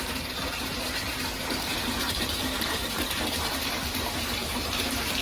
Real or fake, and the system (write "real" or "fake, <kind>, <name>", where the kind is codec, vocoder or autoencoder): fake, vocoder, BigVGAN v2